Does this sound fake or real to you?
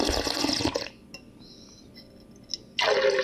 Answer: real